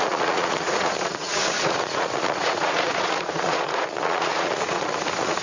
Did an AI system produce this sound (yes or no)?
yes